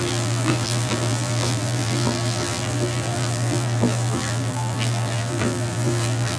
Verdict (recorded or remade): remade